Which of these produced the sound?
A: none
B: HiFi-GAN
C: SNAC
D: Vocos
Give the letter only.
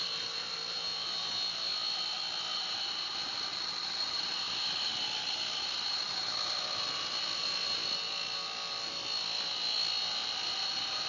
A